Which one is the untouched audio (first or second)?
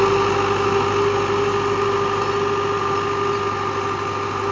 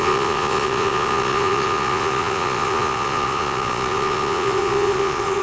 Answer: first